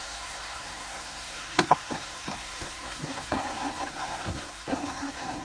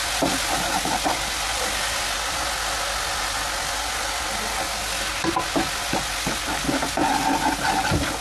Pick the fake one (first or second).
first